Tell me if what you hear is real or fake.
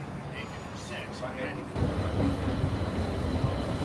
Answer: real